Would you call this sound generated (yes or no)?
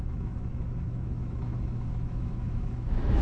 yes